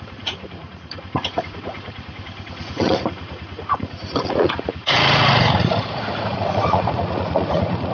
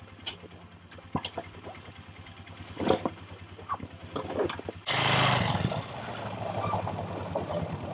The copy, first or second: first